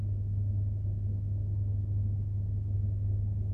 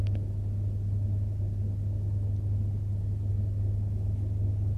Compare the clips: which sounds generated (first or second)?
first